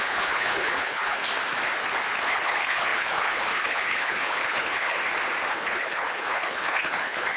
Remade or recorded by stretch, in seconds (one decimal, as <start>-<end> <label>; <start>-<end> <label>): 0.0-1.2 remade; 1.2-2.3 recorded; 2.3-5.0 remade; 5.0-5.5 recorded; 5.5-7.4 remade